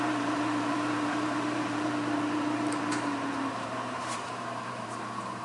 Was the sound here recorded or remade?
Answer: remade